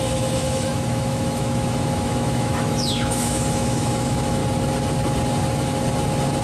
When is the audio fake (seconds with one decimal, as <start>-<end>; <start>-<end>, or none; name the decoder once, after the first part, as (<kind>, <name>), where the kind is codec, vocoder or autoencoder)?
0.0-4.4 (autoencoder, DAC-VAE)